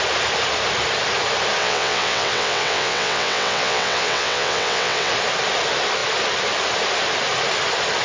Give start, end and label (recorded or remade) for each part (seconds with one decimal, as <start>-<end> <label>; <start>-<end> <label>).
0.0-1.6 recorded; 1.6-5.1 remade; 5.1-8.0 recorded

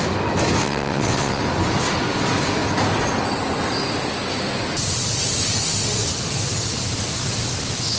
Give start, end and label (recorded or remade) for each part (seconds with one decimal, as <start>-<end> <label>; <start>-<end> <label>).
0.0-0.6 recorded; 0.6-1.4 remade; 1.4-8.0 recorded

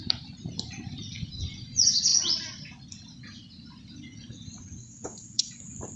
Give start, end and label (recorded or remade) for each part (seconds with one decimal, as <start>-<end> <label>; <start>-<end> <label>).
0.0-4.8 recorded; 4.8-5.6 remade; 5.6-6.0 recorded

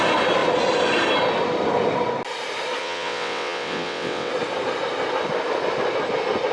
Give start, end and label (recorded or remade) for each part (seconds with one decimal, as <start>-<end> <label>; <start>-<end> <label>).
0.0-2.8 recorded; 2.8-4.3 remade; 4.3-6.5 recorded

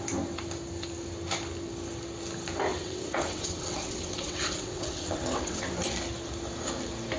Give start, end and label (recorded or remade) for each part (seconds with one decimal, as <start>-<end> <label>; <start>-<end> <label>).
0.0-2.7 recorded; 2.7-5.7 remade; 5.7-7.2 recorded